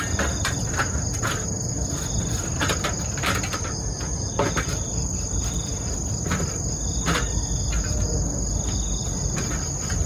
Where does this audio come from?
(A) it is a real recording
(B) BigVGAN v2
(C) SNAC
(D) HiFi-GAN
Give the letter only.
A